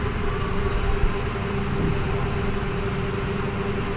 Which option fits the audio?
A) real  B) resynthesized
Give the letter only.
A